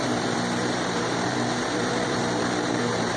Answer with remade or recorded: remade